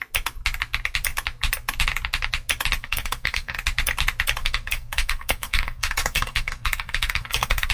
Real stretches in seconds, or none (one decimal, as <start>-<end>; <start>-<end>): 0.0-2.8; 3.6-4.4